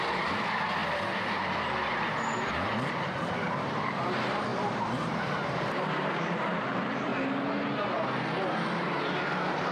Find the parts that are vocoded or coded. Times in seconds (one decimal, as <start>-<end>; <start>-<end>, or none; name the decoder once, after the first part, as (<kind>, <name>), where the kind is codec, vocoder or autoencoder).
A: 0.0-0.8 (vocoder, BigVGAN v2); 3.7-7.1; 9.2-9.7